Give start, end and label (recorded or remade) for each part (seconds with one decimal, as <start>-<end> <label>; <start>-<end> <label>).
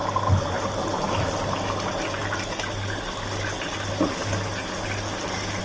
0.0-5.6 recorded